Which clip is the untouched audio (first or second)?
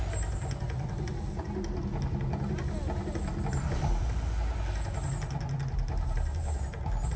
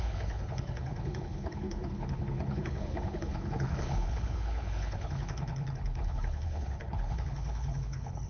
first